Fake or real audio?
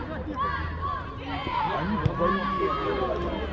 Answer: fake